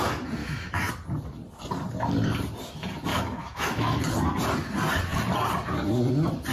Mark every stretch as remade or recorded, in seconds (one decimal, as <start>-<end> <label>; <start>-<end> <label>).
0.0-0.4 recorded; 0.4-0.9 remade; 0.9-3.1 recorded; 3.1-4.0 remade; 4.0-6.5 recorded